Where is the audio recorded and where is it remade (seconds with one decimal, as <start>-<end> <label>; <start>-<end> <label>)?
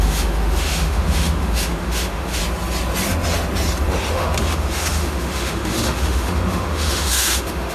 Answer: 0.0-2.4 remade; 2.4-4.1 recorded; 4.1-7.7 remade